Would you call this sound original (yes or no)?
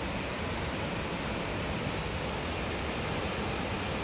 yes